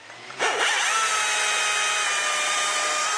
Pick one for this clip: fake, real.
real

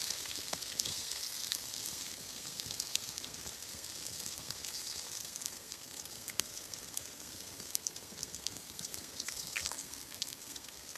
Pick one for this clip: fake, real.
fake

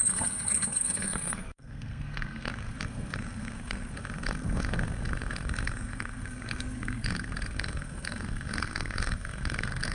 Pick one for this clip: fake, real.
fake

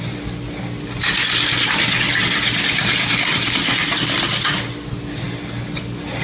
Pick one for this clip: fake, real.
real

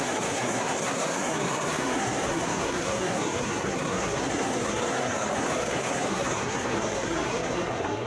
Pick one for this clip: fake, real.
fake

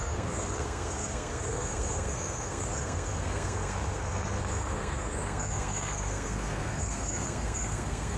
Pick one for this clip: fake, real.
fake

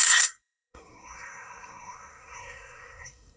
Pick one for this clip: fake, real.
fake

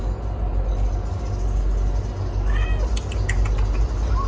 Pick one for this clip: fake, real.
real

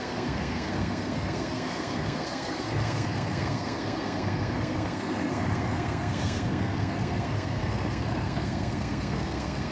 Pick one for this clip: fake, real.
fake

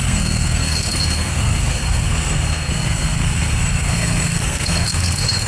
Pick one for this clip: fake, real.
fake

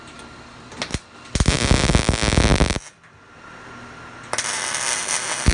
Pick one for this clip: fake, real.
real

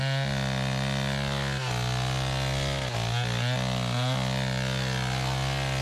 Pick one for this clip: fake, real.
real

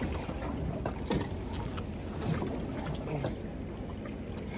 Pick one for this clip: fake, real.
real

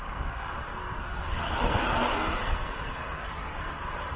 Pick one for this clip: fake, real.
fake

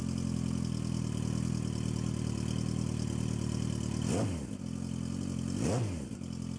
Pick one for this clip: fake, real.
real